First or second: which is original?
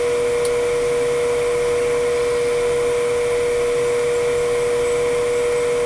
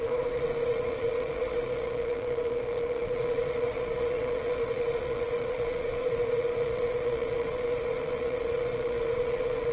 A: first